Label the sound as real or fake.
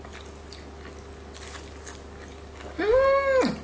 real